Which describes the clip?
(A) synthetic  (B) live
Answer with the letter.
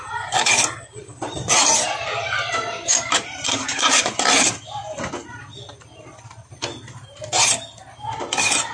A